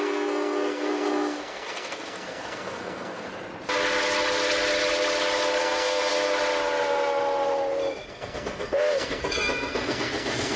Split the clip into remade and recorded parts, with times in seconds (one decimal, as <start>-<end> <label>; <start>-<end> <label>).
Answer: 0.0-3.3 remade; 3.3-5.6 recorded; 5.6-6.1 remade; 6.1-8.1 recorded; 8.1-10.6 remade

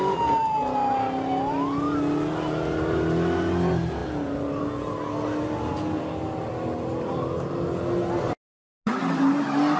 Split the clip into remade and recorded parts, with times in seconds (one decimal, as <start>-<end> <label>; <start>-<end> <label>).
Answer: 0.0-9.8 recorded

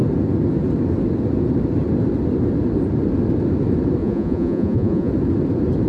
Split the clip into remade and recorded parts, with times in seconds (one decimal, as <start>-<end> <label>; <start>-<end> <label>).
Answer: 0.0-4.0 recorded; 4.0-5.1 remade; 5.1-5.9 recorded

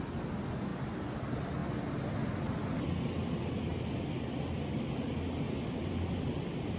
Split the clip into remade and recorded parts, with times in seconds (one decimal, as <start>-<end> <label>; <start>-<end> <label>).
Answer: 0.0-6.8 recorded

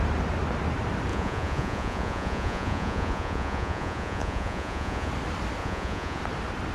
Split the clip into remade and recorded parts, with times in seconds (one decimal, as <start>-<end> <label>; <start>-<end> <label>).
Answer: 0.0-1.1 recorded; 1.1-5.1 remade; 5.1-5.6 recorded; 5.6-6.2 remade; 6.2-6.7 recorded